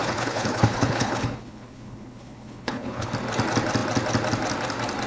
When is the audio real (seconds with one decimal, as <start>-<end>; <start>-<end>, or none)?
3.1-5.1